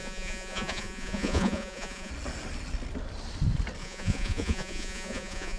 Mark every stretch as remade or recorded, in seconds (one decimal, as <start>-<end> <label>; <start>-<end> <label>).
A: 0.0-2.1 remade; 2.1-3.8 recorded; 3.8-5.6 remade